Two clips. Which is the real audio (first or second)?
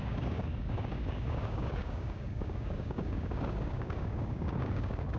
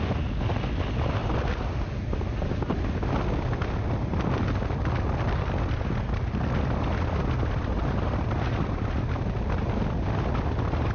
second